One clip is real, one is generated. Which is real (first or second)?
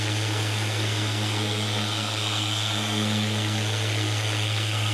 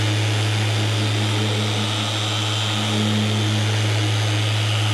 second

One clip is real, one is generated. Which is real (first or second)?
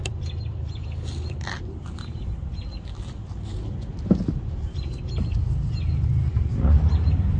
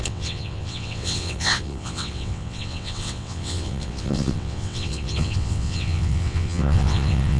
first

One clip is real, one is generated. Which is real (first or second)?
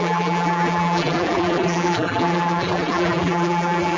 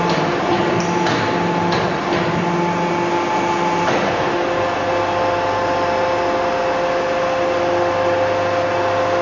second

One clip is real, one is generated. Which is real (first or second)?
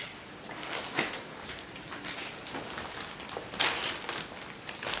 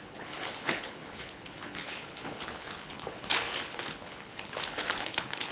first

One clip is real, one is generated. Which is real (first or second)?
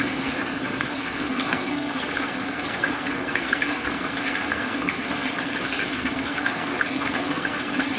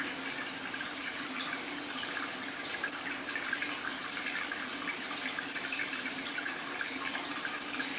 second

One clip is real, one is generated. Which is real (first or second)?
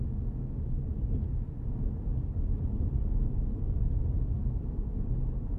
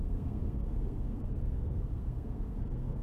first